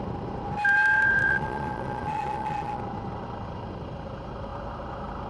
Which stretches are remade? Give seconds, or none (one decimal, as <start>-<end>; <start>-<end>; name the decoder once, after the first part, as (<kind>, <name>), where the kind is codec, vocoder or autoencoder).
1.2-2.8 (vocoder, Vocos)